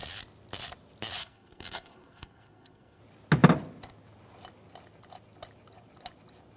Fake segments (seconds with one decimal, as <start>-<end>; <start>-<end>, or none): 1.2-3.0